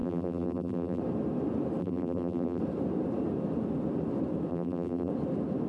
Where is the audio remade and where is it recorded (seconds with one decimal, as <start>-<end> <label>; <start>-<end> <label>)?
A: 0.0-1.0 remade; 1.0-1.8 recorded; 1.8-2.6 remade; 2.6-4.5 recorded; 4.5-5.1 remade; 5.1-5.7 recorded